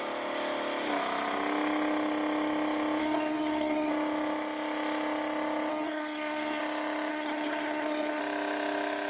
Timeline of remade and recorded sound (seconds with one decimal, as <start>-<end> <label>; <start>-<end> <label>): 0.0-3.0 recorded; 3.0-3.9 remade; 3.9-5.7 recorded; 5.7-6.6 remade; 6.6-7.1 recorded; 7.1-8.2 remade; 8.2-9.1 recorded